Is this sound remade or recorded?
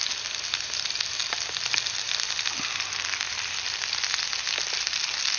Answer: recorded